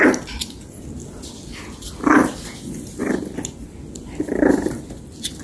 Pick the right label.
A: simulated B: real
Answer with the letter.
B